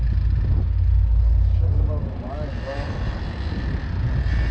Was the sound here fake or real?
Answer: real